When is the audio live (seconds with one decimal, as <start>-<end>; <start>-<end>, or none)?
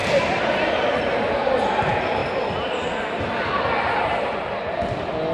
0.0-2.2; 2.9-5.3